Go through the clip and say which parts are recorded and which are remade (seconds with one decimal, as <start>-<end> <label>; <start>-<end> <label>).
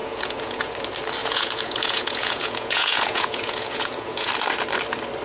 0.0-0.7 remade; 0.7-1.2 recorded; 1.2-4.3 remade; 4.3-5.2 recorded